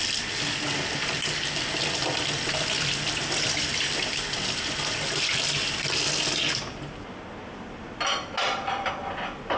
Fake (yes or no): no